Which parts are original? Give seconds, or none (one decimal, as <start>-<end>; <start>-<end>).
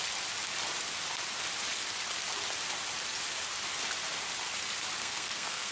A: 0.0-5.0